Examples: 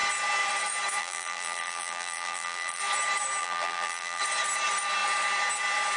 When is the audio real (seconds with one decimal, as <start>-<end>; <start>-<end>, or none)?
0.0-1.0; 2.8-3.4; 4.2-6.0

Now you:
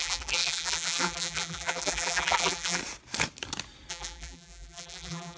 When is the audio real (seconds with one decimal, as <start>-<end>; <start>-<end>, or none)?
2.8-3.9

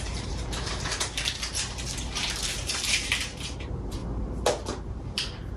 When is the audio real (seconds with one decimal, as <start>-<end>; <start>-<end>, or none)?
4.0-4.9

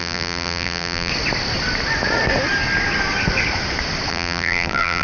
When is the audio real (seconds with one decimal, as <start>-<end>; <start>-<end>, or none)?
1.1-4.1